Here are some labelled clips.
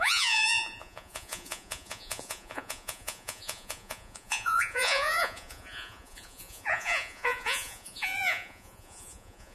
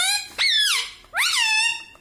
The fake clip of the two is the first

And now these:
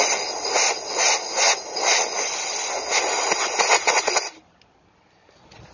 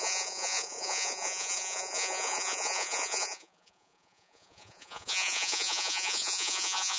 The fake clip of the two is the second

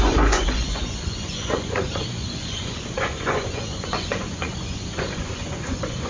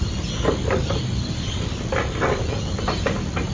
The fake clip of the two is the first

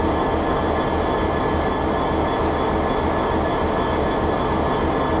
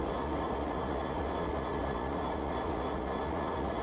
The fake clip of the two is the second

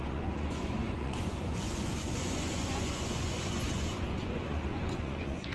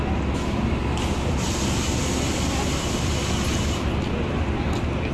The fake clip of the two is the first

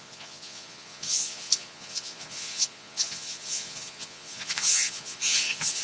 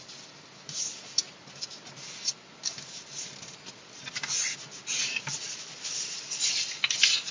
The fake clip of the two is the first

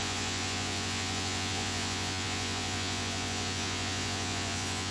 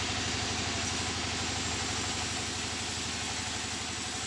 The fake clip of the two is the first